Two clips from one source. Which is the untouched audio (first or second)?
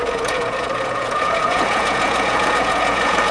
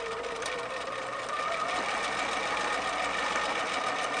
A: second